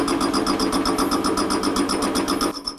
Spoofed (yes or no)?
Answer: no